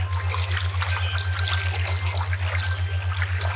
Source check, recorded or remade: recorded